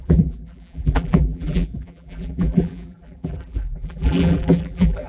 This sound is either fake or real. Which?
fake